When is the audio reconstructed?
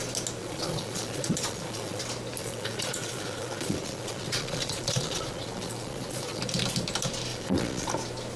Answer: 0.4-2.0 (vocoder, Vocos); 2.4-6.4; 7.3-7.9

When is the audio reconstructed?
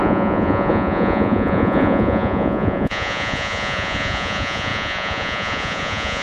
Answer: 0.0-6.2 (vocoder, Vocos)